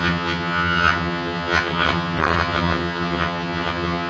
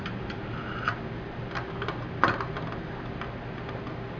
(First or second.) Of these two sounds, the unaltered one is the second